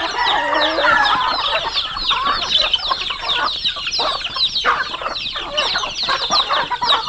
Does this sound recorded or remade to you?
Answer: recorded